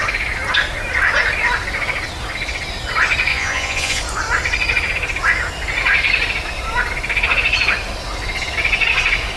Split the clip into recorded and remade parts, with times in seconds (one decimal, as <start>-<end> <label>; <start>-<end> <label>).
0.0-3.3 recorded; 3.3-4.0 remade; 4.0-9.4 recorded